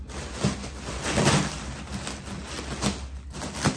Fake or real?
real